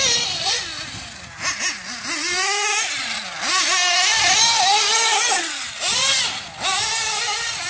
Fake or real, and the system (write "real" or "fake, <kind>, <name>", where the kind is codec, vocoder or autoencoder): real